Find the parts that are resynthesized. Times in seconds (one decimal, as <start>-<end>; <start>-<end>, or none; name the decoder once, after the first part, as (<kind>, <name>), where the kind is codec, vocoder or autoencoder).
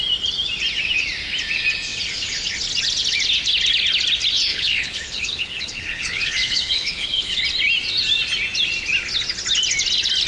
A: 4.5-7.4 (codec, HILCodec)